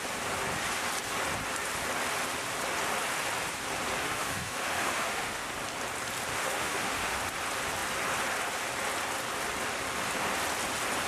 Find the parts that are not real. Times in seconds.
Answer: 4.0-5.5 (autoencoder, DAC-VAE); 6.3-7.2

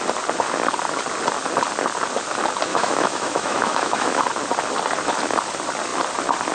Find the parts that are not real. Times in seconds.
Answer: 2.7-4.2 (autoencoder, DAC-VAE)

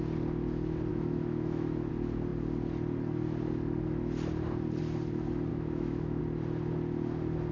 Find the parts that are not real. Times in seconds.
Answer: 0.9-1.9 (autoencoder, DAC-VAE); 5.5-6.2

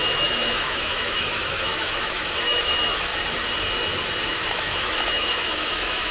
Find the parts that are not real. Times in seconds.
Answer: 0.0-3.1 (autoencoder, DAC-VAE); 4.2-6.1